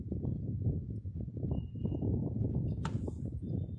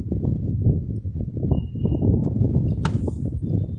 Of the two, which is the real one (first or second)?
second